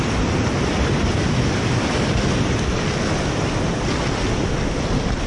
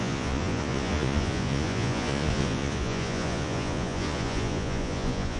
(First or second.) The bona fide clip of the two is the first